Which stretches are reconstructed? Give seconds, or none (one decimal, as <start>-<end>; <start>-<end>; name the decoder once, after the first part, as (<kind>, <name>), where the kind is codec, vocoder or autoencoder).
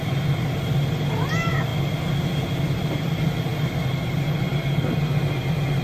none